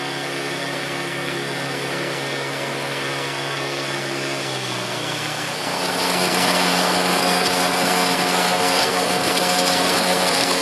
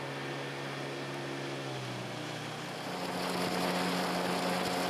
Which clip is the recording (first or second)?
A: second